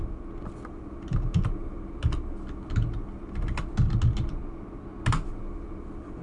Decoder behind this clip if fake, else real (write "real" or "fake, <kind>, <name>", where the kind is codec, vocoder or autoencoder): real